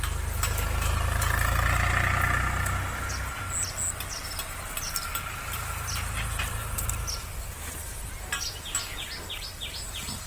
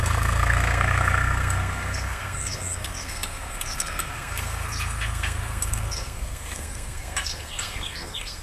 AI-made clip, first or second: second